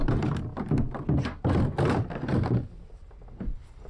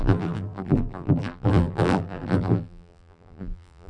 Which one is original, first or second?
first